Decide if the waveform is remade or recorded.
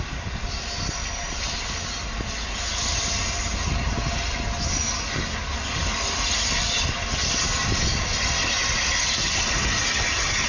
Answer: recorded